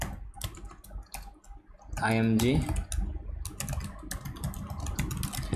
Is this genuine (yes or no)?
yes